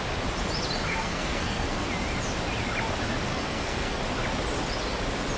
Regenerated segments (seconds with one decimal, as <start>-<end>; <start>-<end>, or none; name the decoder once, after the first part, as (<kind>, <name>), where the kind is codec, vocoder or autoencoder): 0.9-1.9 (codec, SNAC); 3.3-4.0